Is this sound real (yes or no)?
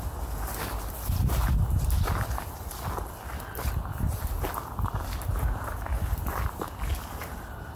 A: yes